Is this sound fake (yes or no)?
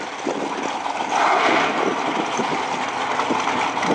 no